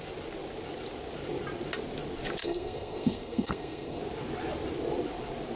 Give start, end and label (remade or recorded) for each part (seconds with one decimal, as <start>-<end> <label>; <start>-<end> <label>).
0.0-2.4 recorded; 2.4-4.0 remade; 4.0-5.6 recorded